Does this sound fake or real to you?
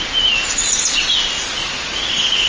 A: real